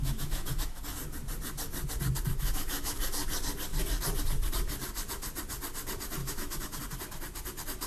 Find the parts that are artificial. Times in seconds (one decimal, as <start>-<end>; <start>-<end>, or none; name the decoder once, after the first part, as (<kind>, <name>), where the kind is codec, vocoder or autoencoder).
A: 0.0-0.8 (autoencoder, DAC-VAE); 2.3-3.0; 6.2-6.8